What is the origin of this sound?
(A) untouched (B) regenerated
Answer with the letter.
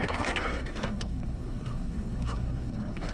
B